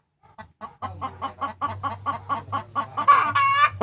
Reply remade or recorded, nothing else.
recorded